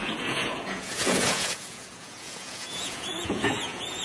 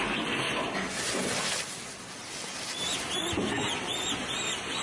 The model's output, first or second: first